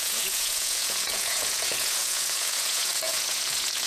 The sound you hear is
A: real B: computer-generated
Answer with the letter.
B